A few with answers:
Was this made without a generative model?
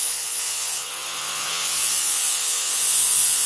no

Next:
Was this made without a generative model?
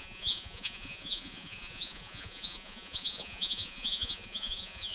no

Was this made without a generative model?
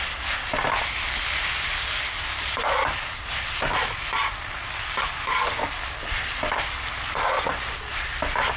yes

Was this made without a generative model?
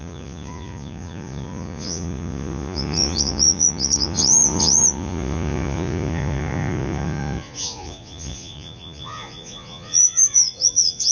no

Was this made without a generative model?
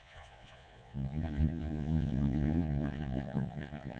no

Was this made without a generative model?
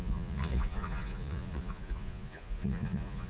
no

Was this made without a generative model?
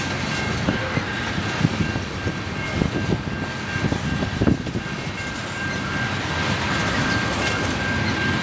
yes